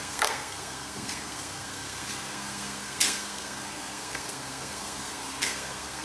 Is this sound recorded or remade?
remade